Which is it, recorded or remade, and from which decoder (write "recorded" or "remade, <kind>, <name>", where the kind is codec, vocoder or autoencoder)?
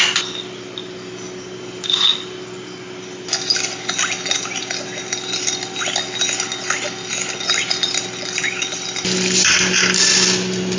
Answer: recorded